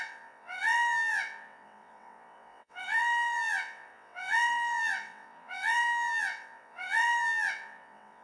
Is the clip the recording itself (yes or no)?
no